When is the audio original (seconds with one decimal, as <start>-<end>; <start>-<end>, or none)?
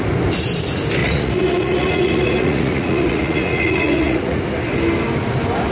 0.0-1.0; 4.4-5.7